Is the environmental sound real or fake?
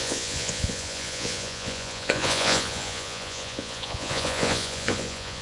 fake